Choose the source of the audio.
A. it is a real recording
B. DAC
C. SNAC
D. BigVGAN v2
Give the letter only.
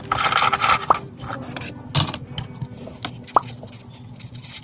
A